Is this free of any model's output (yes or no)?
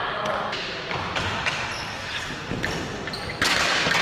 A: yes